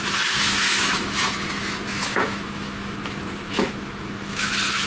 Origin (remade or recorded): remade